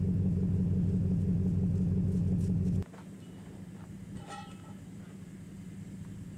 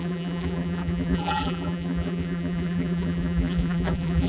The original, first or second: first